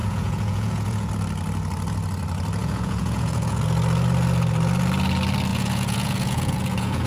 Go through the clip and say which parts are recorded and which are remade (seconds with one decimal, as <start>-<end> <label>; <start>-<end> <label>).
0.0-1.1 remade; 1.1-2.6 recorded; 2.6-3.6 remade; 3.6-5.5 recorded; 5.5-7.1 remade

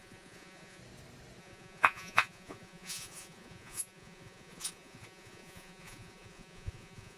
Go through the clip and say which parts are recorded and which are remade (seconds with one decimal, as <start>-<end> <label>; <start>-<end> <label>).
0.0-0.8 remade; 0.8-1.4 recorded; 1.4-7.2 remade

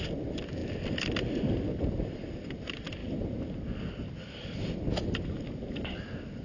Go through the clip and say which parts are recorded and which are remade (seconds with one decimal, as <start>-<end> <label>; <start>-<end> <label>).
0.0-6.4 recorded

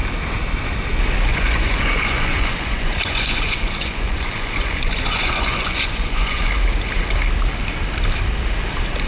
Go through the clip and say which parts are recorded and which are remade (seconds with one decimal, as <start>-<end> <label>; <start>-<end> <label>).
0.0-1.3 recorded; 1.3-6.5 remade; 6.5-9.1 recorded